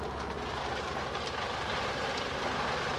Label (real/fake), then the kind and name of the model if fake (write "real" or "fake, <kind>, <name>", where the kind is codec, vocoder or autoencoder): fake, vocoder, BigVGAN v2